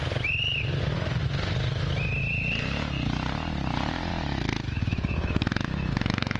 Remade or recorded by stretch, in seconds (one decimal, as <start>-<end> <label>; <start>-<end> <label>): 0.0-4.1 recorded; 4.1-6.4 remade